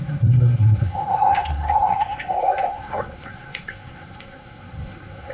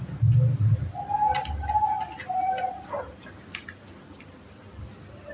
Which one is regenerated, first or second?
first